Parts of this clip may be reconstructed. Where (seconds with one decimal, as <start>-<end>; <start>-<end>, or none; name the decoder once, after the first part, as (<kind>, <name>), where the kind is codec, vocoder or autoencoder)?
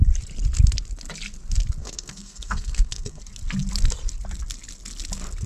1.8-3.2 (codec, SNAC)